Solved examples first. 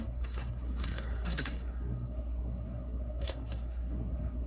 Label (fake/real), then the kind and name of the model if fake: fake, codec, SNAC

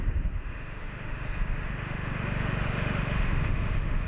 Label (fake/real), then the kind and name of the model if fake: fake, autoencoder, DAC-VAE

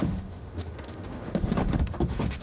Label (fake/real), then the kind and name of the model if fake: fake, autoencoder, DAC-VAE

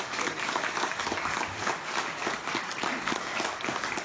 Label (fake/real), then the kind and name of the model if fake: fake, codec, DAC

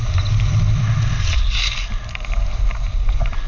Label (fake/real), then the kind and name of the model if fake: real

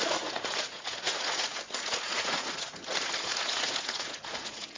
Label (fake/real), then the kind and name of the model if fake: fake, vocoder, Vocos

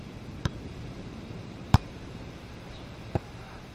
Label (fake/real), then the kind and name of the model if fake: fake, vocoder, BigVGAN v2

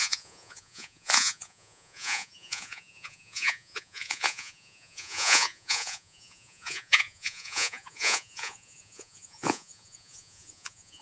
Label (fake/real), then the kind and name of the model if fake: fake, vocoder, Vocos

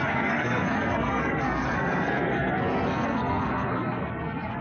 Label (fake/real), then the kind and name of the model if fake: fake, codec, SNAC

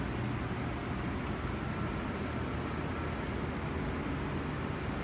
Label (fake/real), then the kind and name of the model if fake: real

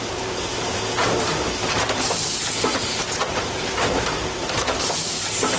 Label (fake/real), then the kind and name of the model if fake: fake, vocoder, BigVGAN v2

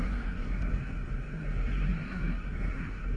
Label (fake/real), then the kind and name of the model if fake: fake, codec, SNAC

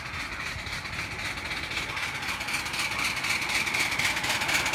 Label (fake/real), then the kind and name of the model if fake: real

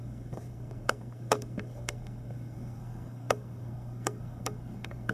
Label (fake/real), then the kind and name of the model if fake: fake, codec, SNAC